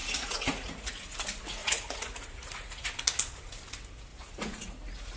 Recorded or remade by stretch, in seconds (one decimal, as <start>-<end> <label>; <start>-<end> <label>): 0.0-1.1 remade; 1.1-1.6 recorded; 1.6-2.9 remade; 2.9-4.1 recorded; 4.1-4.7 remade; 4.7-5.2 recorded